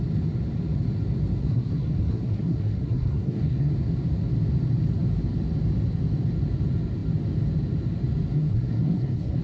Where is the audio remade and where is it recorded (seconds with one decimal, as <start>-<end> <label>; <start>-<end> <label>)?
0.0-1.4 recorded; 1.4-3.7 remade; 3.7-8.3 recorded; 8.3-9.4 remade